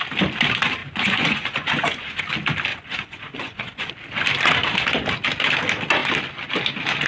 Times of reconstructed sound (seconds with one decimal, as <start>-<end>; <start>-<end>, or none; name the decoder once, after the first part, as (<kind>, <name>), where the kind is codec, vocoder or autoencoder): 0.8-2.2 (vocoder, Vocos); 2.7-3.9